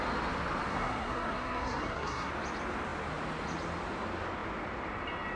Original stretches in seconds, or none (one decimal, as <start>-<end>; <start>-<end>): 0.0-0.7; 2.3-5.4